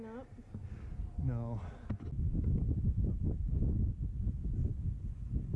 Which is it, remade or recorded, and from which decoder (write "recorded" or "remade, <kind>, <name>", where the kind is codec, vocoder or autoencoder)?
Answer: recorded